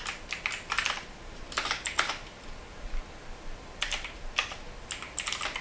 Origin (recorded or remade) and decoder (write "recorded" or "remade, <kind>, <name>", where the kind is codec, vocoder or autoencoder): recorded